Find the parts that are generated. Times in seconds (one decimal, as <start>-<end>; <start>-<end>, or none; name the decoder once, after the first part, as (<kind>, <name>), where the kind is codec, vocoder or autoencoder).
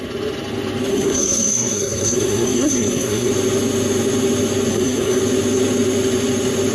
0.9-3.3 (codec, SNAC); 4.7-5.2